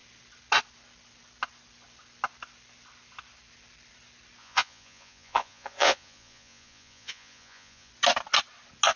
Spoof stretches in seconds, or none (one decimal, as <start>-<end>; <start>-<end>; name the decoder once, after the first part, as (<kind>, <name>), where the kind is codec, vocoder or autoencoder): 4.4-7.9 (vocoder, Vocos)